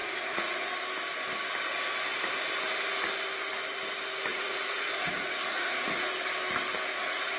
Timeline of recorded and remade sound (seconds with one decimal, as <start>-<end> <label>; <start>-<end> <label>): 0.0-0.7 remade; 0.7-4.3 recorded; 4.3-6.1 remade; 6.1-7.4 recorded